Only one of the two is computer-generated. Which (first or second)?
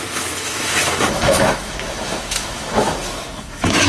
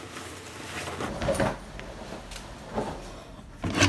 first